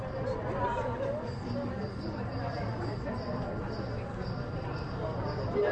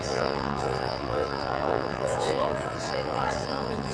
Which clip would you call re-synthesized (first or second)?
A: second